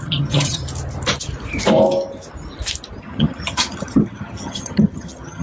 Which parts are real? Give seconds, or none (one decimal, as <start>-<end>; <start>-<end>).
0.6-3.0